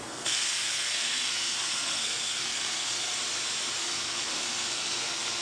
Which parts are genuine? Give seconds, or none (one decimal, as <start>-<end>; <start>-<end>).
3.1-3.8